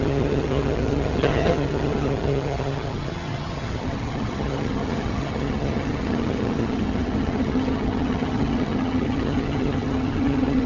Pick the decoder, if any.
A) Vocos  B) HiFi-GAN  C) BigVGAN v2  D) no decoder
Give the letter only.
B